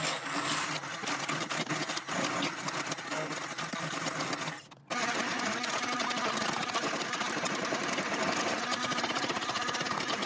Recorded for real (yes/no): yes